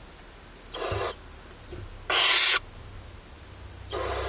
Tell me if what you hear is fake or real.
real